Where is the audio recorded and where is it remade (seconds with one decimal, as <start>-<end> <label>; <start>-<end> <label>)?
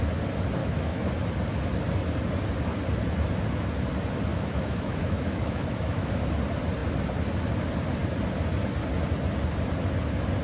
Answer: 0.0-0.6 recorded; 0.6-1.1 remade; 1.1-4.3 recorded; 4.3-6.1 remade; 6.1-10.4 recorded